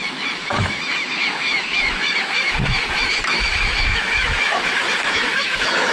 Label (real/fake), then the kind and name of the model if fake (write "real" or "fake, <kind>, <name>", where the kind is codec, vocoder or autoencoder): fake, autoencoder, DAC-VAE